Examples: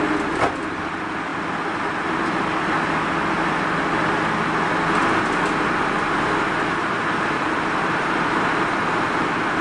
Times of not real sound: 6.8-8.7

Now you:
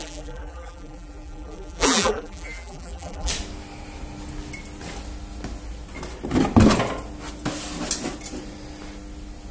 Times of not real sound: 0.0-3.3

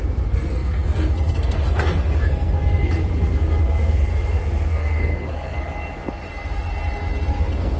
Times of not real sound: 0.0-5.6; 7.3-7.8